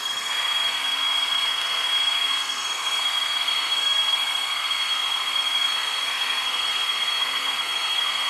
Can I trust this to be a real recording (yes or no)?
no